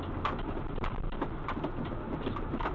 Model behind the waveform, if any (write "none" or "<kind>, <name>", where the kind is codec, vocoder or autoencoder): none